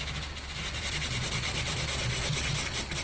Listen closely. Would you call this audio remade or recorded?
recorded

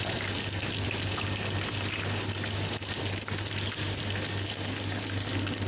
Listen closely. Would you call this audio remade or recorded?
recorded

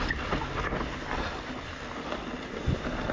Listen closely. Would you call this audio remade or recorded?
recorded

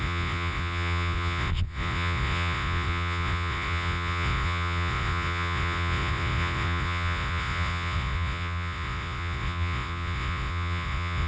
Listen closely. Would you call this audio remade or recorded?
remade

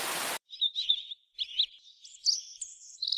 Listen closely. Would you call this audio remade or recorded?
recorded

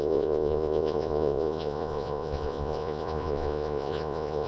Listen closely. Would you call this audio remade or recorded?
remade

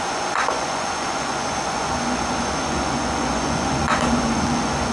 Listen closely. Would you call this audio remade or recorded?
remade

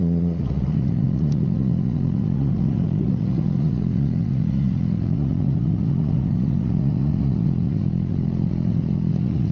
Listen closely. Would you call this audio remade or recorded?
remade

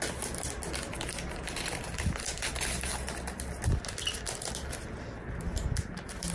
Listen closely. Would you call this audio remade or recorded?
recorded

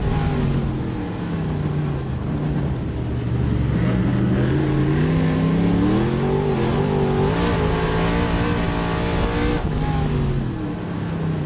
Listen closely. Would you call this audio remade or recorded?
recorded